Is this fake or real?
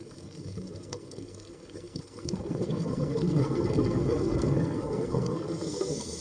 fake